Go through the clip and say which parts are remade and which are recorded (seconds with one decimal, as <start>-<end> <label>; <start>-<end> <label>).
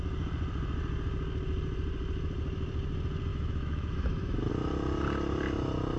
0.0-3.3 recorded; 3.3-4.5 remade; 4.5-6.0 recorded